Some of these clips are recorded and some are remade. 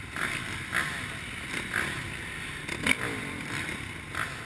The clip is recorded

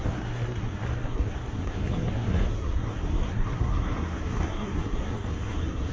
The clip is remade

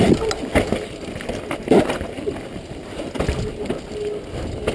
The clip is recorded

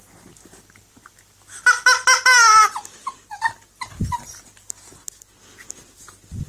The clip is recorded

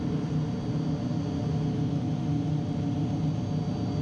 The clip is recorded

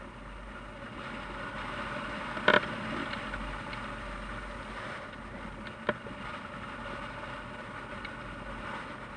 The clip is recorded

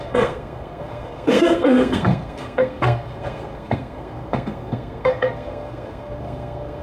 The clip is remade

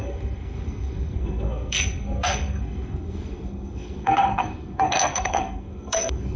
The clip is remade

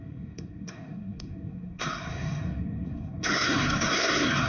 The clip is remade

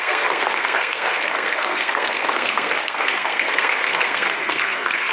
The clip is remade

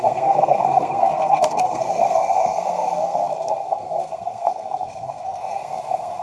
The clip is remade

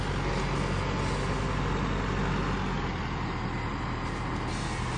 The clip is recorded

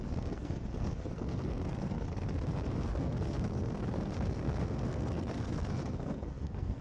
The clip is remade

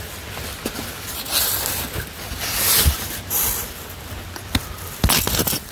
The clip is recorded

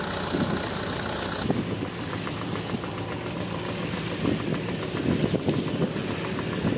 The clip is recorded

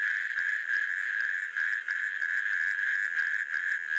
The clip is recorded